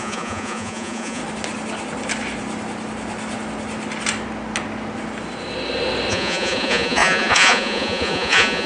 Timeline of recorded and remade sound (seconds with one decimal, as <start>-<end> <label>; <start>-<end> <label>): 0.0-1.2 remade; 1.2-6.1 recorded; 6.1-8.7 remade